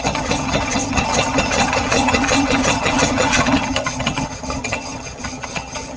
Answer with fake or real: fake